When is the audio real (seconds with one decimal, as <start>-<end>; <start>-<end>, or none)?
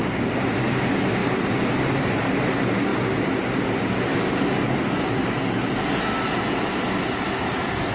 0.0-1.2; 2.3-7.9